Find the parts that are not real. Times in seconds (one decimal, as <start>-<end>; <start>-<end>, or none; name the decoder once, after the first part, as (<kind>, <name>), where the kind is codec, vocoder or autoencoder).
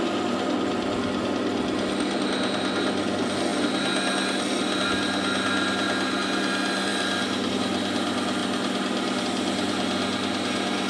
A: none